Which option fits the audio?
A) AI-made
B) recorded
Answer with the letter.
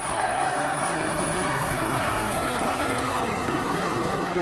A